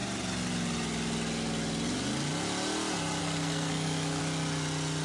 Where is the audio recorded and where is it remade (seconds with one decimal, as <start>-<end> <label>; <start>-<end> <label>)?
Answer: 0.0-3.2 recorded; 3.2-4.2 remade; 4.2-5.0 recorded